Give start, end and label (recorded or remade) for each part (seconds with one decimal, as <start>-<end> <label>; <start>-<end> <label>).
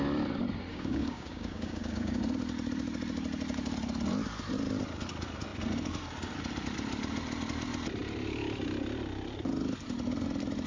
0.0-0.7 recorded; 0.7-2.2 remade; 2.2-10.7 recorded